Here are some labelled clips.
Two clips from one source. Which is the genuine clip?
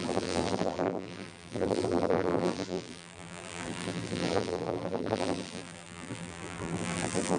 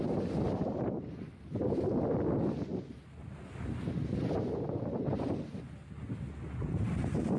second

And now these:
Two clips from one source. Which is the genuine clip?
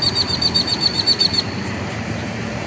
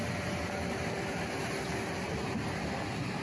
second